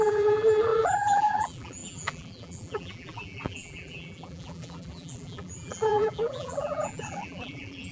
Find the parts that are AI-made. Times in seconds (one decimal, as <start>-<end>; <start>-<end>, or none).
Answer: 0.0-7.9